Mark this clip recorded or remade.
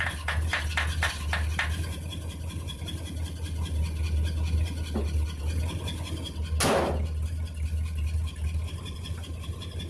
recorded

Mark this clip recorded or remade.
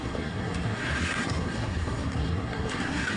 remade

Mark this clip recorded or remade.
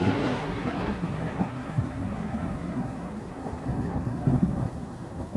remade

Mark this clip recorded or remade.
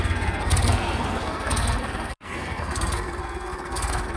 remade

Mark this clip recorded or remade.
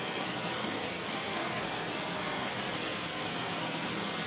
remade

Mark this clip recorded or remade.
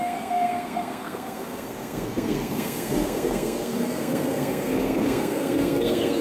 remade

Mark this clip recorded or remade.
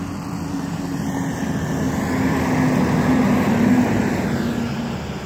recorded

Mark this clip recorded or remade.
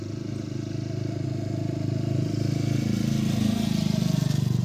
recorded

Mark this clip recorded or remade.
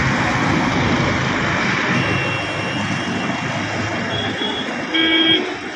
recorded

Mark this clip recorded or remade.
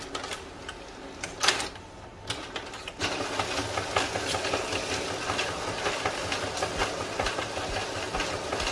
recorded